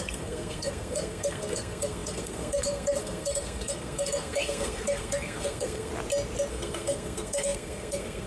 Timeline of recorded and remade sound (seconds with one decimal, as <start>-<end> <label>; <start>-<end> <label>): 0.0-5.9 remade; 5.9-6.5 recorded; 6.5-8.3 remade

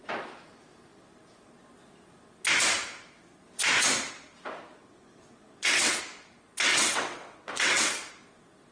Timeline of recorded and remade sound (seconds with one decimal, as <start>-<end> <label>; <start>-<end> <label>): 0.0-4.7 recorded; 4.7-6.0 remade; 6.0-6.7 recorded; 6.7-8.1 remade; 8.1-8.7 recorded

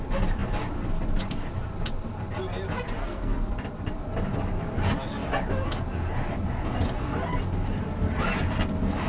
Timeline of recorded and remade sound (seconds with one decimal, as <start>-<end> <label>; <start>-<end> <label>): 0.0-3.0 recorded; 3.0-3.5 remade; 3.5-9.1 recorded

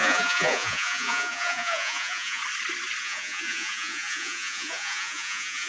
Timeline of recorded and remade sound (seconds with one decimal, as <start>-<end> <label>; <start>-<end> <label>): 0.0-2.4 remade; 2.4-3.0 recorded; 3.0-5.7 remade

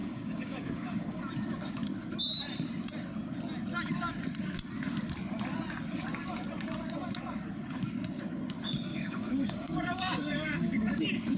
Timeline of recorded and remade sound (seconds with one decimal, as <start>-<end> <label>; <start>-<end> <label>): 0.0-1.2 remade; 1.2-8.9 recorded; 8.9-11.0 remade; 11.0-11.4 recorded

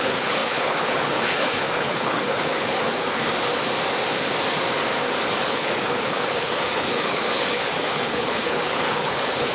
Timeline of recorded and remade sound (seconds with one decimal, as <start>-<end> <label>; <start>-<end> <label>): 0.0-3.3 remade; 3.3-5.4 recorded; 5.4-9.5 remade

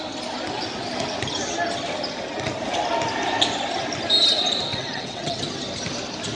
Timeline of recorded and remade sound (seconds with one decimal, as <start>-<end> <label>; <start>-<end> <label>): 0.0-4.7 recorded; 4.7-5.4 remade; 5.4-6.3 recorded